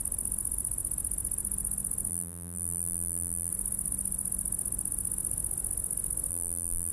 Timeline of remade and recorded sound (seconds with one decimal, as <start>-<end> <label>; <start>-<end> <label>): 0.0-2.1 recorded; 2.1-3.5 remade; 3.5-6.3 recorded; 6.3-6.9 remade